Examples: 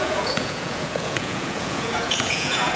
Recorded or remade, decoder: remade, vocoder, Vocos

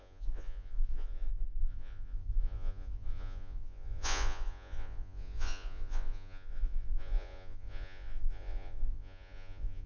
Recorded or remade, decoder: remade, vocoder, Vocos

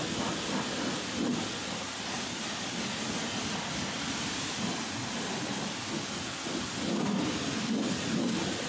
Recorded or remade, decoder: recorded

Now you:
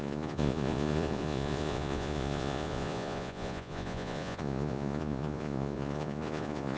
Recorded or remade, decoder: remade, vocoder, Vocos